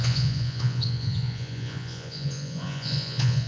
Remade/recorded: remade